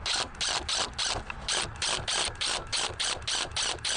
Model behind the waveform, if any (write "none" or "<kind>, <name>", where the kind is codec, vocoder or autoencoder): none